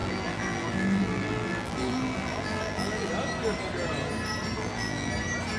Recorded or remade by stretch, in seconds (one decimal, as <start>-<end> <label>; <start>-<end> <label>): 0.0-3.1 remade; 3.1-4.6 recorded; 4.6-5.1 remade; 5.1-5.6 recorded